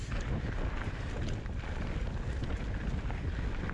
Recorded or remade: recorded